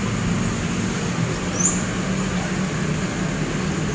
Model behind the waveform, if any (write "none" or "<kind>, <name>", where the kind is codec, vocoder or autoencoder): none